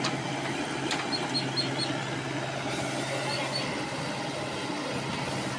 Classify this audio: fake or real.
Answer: real